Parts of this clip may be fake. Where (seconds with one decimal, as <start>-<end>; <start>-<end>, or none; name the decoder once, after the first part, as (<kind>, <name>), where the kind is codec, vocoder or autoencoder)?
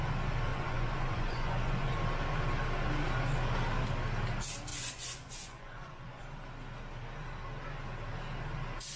0.5-1.9 (vocoder, Vocos); 4.7-6.2